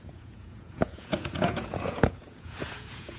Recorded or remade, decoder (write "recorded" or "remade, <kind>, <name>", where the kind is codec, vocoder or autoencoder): remade, vocoder, Vocos